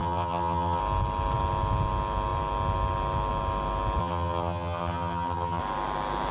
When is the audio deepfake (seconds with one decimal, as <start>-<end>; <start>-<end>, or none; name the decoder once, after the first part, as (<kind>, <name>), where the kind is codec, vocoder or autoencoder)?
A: 0.0-0.8 (vocoder, HiFi-GAN); 4.0-5.6